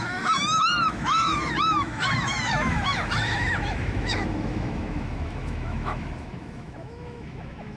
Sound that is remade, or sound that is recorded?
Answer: remade